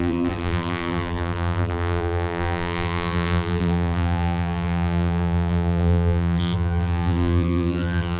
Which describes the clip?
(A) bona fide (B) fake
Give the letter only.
B